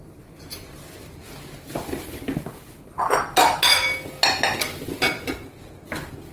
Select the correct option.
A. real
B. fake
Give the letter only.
A